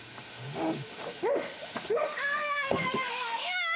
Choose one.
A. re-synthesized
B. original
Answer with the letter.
A